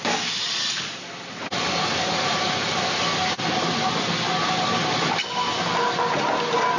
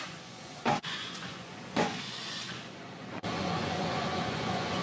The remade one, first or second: second